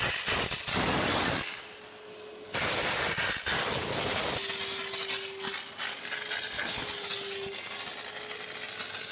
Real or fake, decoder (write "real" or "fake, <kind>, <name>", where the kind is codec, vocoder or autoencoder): real